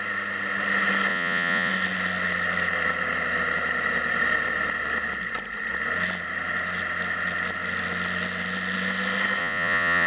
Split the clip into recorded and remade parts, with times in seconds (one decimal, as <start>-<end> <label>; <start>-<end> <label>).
0.0-1.1 recorded; 1.1-1.7 remade; 1.7-9.4 recorded; 9.4-10.1 remade